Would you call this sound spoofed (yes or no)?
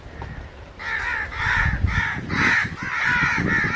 no